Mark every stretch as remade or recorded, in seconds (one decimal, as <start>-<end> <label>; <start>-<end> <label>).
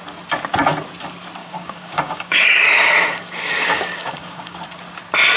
0.0-1.4 recorded; 1.4-4.6 remade; 4.6-5.4 recorded